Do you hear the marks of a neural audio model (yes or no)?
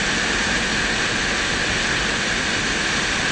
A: no